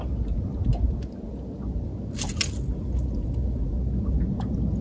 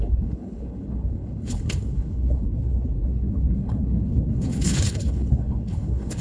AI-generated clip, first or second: second